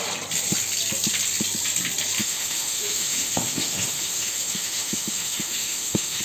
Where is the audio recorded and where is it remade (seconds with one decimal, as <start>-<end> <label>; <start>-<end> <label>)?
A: 0.0-2.2 recorded; 2.2-6.2 remade